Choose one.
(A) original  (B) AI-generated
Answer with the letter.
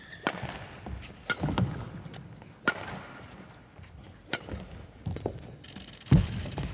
A